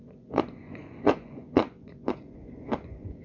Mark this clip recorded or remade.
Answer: remade